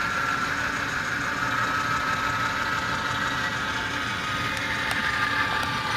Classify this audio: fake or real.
real